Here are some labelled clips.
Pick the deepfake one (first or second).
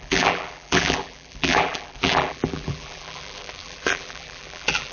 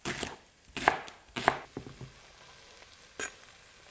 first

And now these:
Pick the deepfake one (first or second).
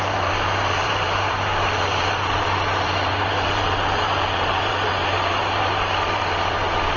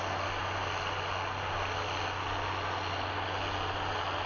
first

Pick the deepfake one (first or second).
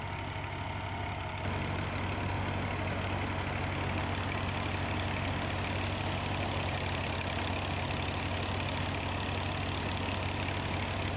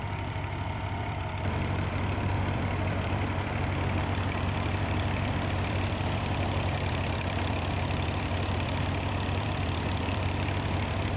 second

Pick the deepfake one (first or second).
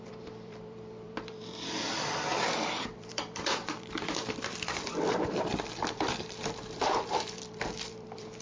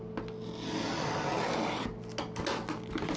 first